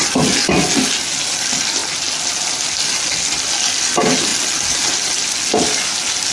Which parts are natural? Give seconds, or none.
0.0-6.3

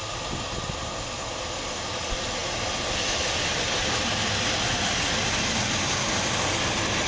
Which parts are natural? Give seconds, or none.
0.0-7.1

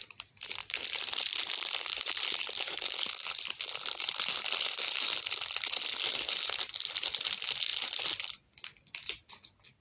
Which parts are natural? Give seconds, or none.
0.0-9.8

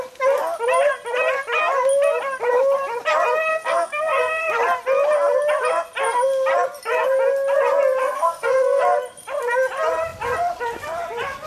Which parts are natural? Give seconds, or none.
0.0-3.5; 4.5-8.0; 8.8-11.5

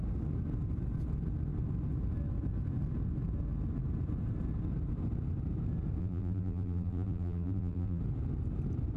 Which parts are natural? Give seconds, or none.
0.0-6.0; 8.0-9.0